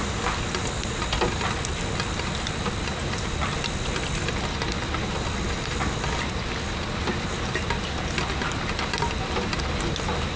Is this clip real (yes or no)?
yes